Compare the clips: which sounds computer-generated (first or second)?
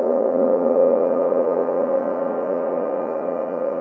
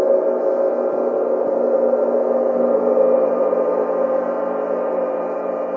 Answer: first